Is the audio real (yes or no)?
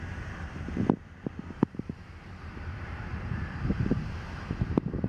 no